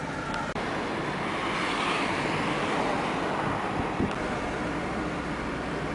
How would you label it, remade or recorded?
recorded